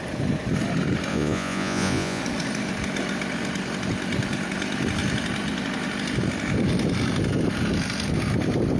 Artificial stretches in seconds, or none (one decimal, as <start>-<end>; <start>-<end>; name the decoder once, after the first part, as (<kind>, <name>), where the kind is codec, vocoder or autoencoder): 1.1-2.2 (vocoder, Vocos)